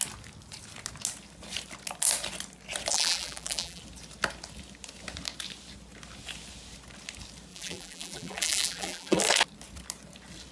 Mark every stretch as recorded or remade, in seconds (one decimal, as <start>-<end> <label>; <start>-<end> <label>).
0.0-2.9 recorded; 2.9-3.8 remade; 3.8-7.5 recorded; 7.5-9.2 remade; 9.2-10.5 recorded